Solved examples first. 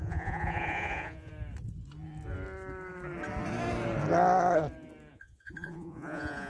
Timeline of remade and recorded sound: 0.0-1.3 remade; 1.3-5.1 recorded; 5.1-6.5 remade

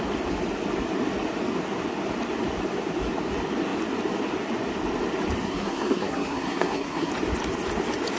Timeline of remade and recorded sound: 0.0-5.4 recorded; 5.4-7.1 remade; 7.1-8.2 recorded

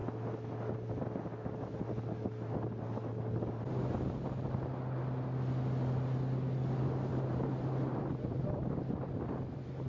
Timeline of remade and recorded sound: 0.0-7.1 recorded; 7.1-9.9 remade

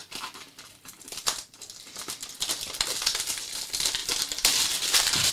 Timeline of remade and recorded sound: 0.0-2.5 remade; 2.5-4.0 recorded; 4.0-5.3 remade

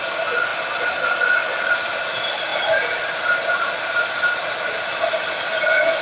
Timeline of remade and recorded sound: 0.0-6.0 recorded

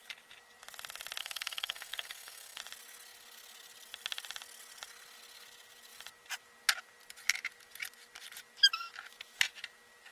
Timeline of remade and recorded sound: 0.0-1.2 recorded; 1.2-2.6 remade; 2.6-10.1 recorded